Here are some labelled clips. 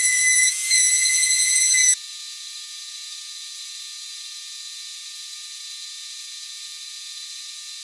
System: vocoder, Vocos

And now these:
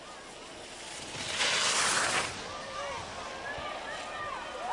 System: none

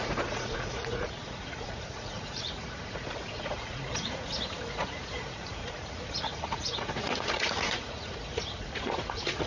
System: vocoder, Vocos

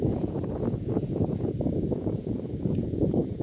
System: vocoder, Vocos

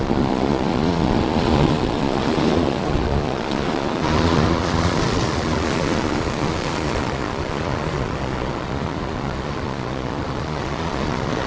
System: vocoder, Vocos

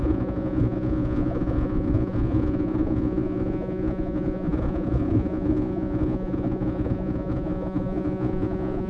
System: vocoder, Vocos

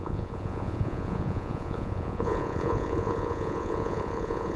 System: vocoder, Vocos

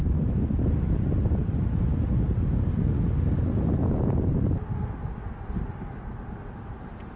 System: none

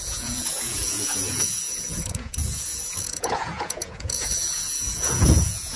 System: vocoder, Vocos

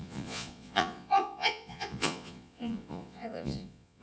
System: vocoder, Vocos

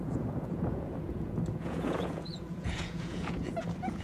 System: vocoder, Vocos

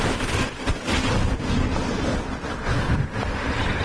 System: none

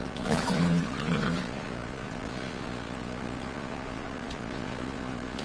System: vocoder, Vocos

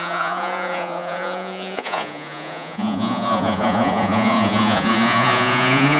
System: vocoder, Vocos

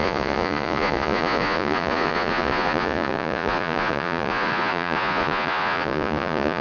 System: vocoder, Vocos